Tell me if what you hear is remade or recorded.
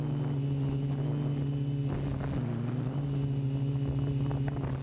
recorded